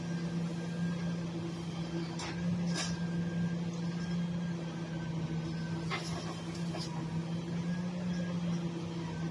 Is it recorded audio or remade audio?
recorded